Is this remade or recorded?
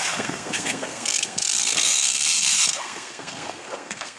remade